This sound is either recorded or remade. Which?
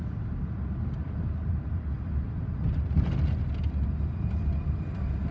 recorded